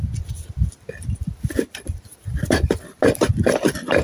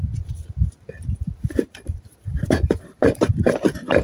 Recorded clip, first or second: first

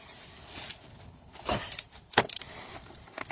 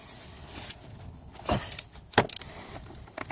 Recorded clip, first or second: second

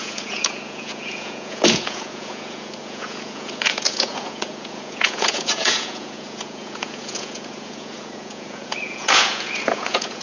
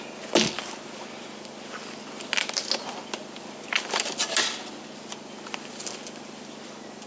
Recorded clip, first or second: second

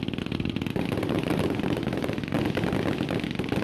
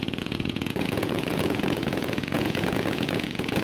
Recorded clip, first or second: first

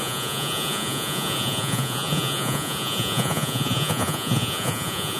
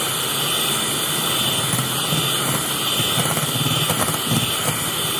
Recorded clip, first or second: second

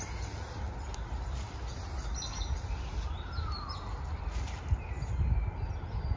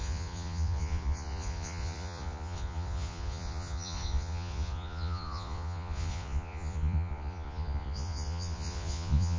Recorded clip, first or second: first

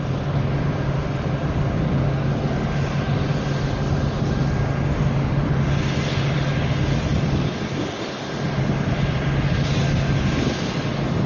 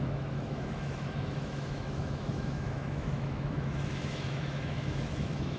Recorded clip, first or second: first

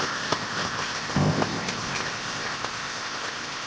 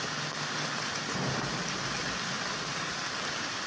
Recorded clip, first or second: second